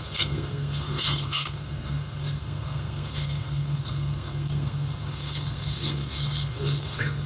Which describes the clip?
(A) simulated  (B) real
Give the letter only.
A